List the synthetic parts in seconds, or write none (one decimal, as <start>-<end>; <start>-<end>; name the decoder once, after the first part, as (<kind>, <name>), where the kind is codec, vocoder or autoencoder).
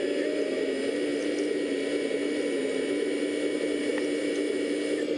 none